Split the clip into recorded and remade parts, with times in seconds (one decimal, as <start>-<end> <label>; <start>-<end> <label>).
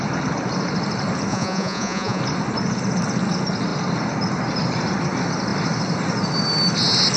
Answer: 0.0-1.3 recorded; 1.3-2.2 remade; 2.2-7.2 recorded